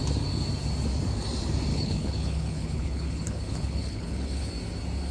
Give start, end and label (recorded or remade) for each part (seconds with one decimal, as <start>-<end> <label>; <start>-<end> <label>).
0.0-1.7 recorded; 1.7-4.5 remade; 4.5-5.1 recorded